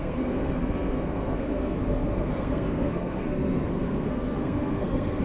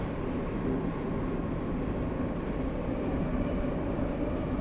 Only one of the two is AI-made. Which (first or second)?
first